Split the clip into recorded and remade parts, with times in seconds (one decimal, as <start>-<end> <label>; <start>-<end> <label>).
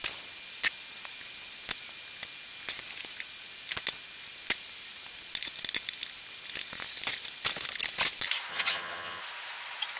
0.0-8.5 recorded; 8.5-9.2 remade; 9.2-10.0 recorded